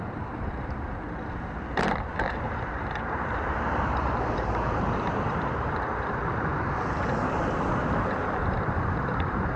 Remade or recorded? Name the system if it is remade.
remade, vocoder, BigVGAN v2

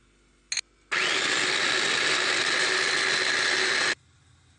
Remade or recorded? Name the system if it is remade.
recorded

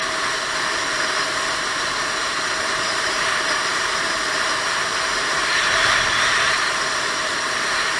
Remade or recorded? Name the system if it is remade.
remade, vocoder, BigVGAN v2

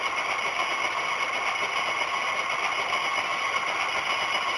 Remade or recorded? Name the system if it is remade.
recorded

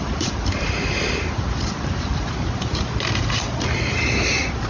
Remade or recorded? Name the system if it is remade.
remade, vocoder, BigVGAN v2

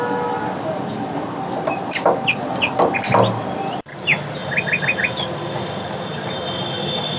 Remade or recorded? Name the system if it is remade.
remade, vocoder, BigVGAN v2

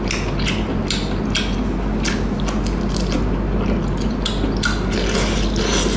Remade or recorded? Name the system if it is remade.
recorded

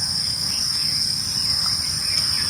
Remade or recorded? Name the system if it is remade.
recorded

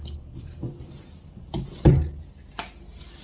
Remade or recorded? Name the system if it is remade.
recorded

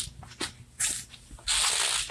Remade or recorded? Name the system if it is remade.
recorded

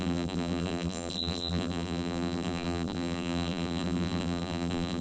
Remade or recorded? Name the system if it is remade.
remade, vocoder, BigVGAN v2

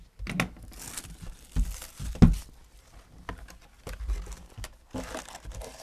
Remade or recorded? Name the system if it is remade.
recorded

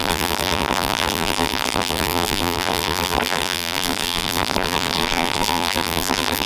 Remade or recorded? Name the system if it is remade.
remade, vocoder, BigVGAN v2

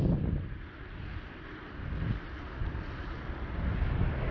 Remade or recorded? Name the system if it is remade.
recorded